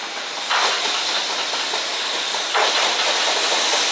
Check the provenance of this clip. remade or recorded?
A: recorded